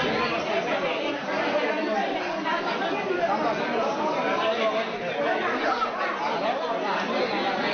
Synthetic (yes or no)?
no